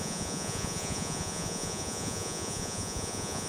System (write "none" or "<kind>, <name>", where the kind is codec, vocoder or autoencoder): vocoder, Vocos